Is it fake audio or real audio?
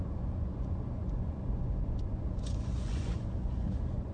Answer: fake